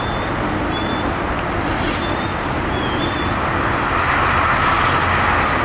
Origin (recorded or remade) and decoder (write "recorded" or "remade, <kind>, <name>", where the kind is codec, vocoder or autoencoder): recorded